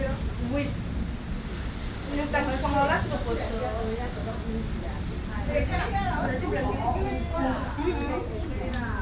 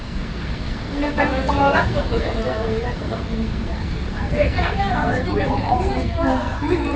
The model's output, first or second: second